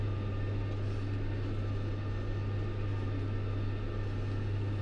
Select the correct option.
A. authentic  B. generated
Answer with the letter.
A